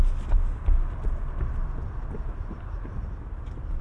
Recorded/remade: recorded